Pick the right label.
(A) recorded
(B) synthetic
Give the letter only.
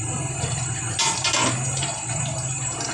A